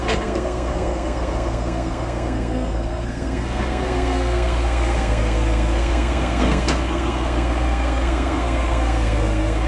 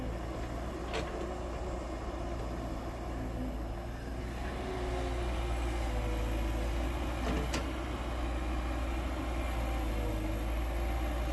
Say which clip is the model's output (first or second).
first